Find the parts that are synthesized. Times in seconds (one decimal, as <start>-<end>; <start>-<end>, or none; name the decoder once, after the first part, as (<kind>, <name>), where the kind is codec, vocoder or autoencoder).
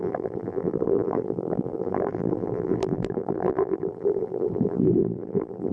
0.0-5.7 (vocoder, BigVGAN v2)